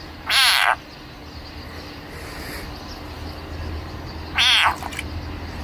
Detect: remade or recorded recorded